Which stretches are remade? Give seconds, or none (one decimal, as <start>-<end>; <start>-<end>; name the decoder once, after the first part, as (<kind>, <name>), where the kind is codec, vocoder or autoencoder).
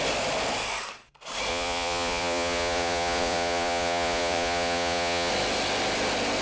1.5-5.3 (vocoder, Vocos)